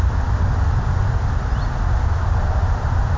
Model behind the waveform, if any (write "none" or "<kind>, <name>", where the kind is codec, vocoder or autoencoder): none